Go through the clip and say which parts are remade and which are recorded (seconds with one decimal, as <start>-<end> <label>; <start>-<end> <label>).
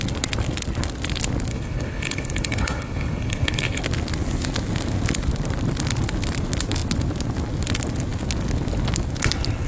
0.0-1.5 recorded; 1.5-3.8 remade; 3.8-9.7 recorded